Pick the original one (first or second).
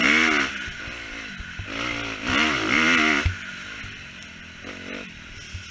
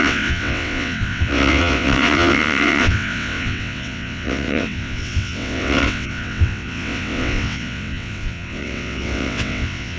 first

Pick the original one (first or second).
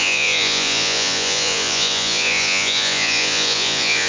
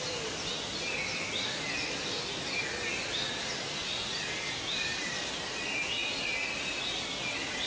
second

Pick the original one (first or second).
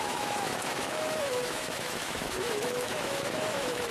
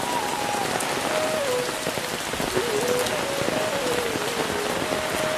second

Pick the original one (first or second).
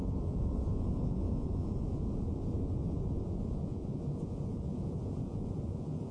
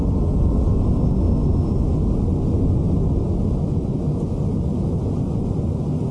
second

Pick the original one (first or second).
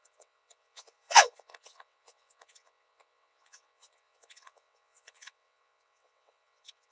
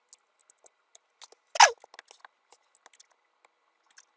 second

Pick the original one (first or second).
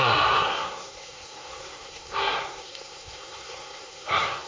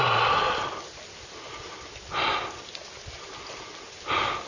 second